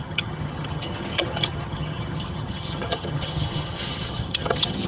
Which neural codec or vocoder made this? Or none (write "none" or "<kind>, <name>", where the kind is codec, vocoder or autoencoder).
vocoder, HiFi-GAN